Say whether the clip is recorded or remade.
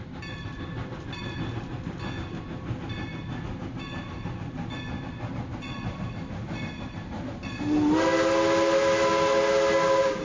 recorded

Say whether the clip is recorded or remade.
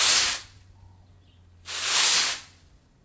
recorded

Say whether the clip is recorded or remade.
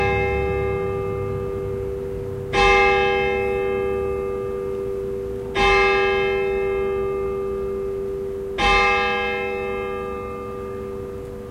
recorded